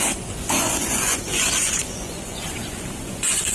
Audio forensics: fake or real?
fake